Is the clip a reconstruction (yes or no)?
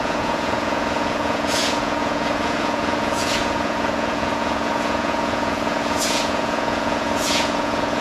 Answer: yes